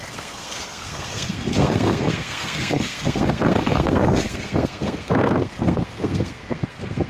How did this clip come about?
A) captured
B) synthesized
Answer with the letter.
B